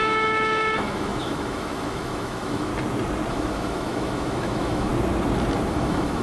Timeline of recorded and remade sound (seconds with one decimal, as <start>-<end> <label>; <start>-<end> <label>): 0.0-2.7 remade; 2.7-3.3 recorded; 3.3-4.9 remade; 4.9-5.7 recorded; 5.7-6.2 remade